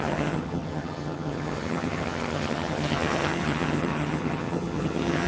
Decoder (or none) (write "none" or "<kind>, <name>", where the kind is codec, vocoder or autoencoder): vocoder, HiFi-GAN